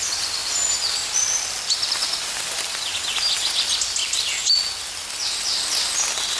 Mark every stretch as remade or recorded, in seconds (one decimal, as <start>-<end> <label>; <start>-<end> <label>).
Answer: 0.0-6.4 recorded